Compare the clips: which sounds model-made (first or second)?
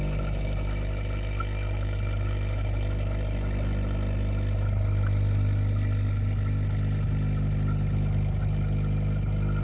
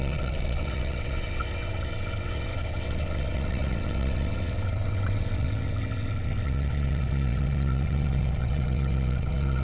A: second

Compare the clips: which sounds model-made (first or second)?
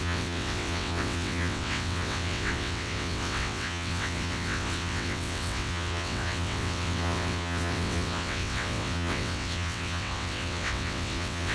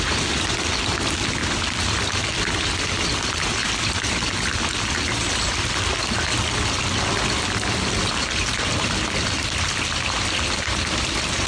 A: first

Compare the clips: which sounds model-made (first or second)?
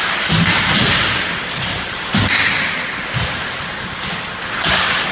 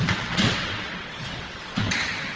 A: second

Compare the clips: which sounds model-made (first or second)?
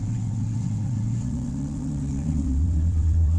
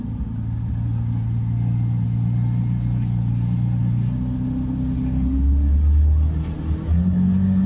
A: first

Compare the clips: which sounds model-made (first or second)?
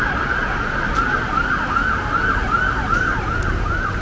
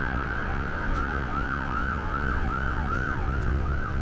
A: second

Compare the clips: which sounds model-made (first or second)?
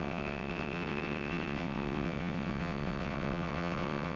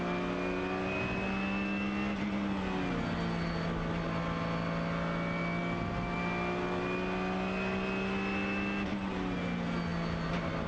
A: first